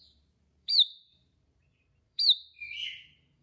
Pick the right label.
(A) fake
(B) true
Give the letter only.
A